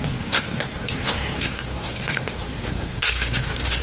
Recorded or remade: remade